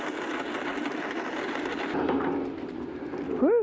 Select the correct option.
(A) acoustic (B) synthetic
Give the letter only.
A